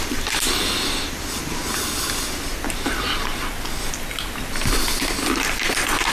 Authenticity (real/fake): real